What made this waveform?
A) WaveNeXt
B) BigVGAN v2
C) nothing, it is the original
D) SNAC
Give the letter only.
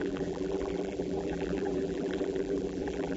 B